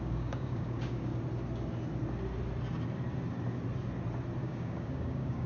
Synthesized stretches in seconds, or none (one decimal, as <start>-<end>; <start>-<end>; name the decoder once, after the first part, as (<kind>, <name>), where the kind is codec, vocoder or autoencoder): 0.0-1.1 (codec, DAC); 4.4-5.5